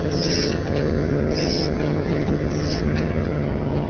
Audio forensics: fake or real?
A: fake